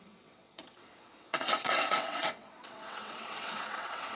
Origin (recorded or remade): remade